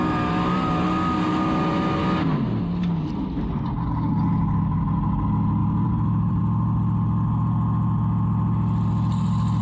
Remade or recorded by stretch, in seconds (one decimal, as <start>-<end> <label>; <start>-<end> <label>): 0.0-5.6 recorded; 5.6-6.4 remade; 6.4-9.6 recorded